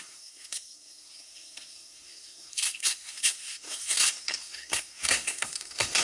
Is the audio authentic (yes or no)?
no